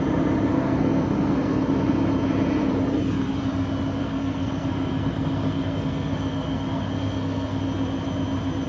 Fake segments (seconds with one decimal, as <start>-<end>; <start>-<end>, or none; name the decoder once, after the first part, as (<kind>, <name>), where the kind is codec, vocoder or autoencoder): 0.5-1.6 (codec, SNAC); 4.0-7.6